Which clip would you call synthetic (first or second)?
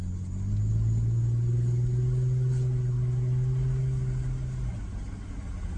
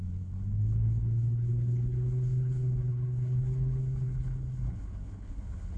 second